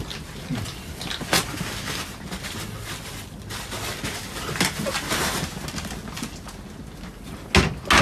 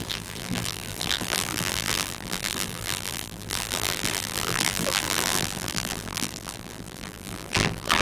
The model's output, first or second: second